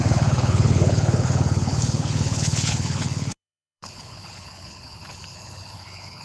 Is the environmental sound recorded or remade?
remade